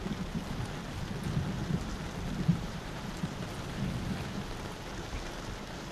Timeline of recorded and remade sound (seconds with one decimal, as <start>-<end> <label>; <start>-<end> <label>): 0.0-2.5 recorded; 2.5-3.5 remade; 3.5-5.9 recorded